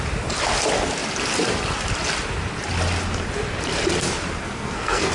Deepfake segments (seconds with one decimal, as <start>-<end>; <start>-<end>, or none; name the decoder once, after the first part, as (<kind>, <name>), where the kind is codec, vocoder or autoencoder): 4.4-5.1 (codec, SNAC)